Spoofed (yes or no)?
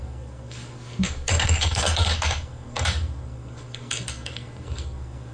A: yes